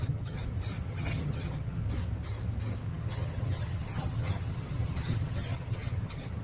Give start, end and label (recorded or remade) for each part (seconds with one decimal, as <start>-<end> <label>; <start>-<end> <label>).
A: 0.0-0.4 remade; 0.4-0.9 recorded; 0.9-1.8 remade; 1.8-2.8 recorded; 2.8-6.4 remade